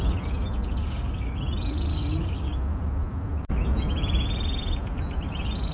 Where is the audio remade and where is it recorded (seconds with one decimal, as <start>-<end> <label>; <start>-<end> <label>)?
0.0-0.8 recorded; 0.8-1.4 remade; 1.4-1.9 recorded; 1.9-2.5 remade; 2.5-5.7 recorded